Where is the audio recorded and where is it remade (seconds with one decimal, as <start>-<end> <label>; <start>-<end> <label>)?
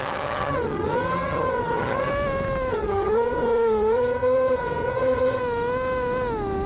0.0-2.1 remade; 2.1-2.7 recorded; 2.7-5.4 remade; 5.4-6.7 recorded